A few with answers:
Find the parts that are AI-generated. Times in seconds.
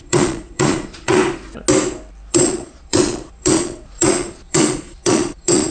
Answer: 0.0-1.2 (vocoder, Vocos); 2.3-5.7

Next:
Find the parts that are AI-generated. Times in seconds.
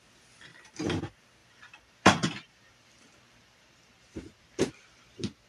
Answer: 0.5-1.0 (vocoder, BigVGAN v2); 1.4-4.7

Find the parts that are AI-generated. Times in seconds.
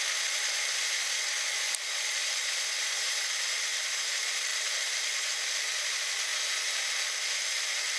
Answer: 0.0-6.3 (vocoder, BigVGAN v2)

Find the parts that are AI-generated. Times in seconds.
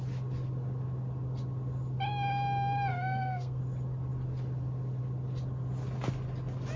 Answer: 2.9-3.6 (codec, SNAC)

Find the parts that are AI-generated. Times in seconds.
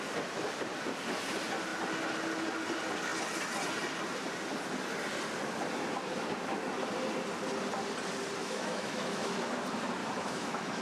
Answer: 8.4-9.5 (autoencoder, DAC-VAE); 10.0-10.8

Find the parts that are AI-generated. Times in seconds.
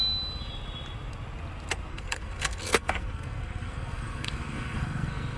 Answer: 1.9-5.4 (codec, SNAC)